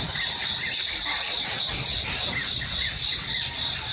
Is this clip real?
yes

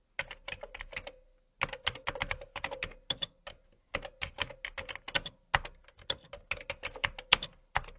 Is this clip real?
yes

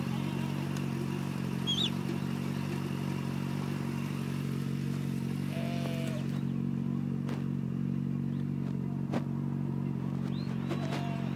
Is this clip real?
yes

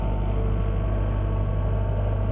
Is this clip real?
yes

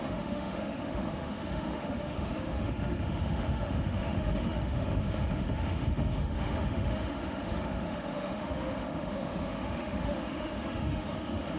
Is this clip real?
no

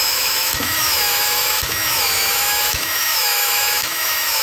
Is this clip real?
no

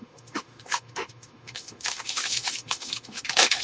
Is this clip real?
no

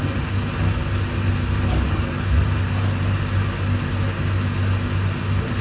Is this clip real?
yes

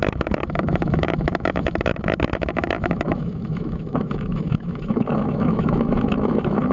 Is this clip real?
no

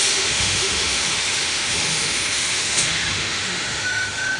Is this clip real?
no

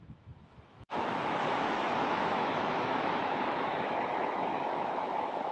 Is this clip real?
no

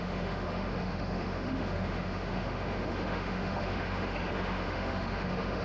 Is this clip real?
no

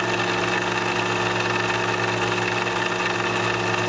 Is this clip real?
yes